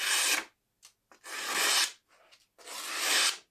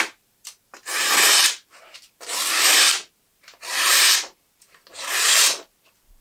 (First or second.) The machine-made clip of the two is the second